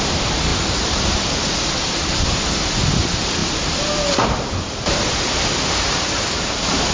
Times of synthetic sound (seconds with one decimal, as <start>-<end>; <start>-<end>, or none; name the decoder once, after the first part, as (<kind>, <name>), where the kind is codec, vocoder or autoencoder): none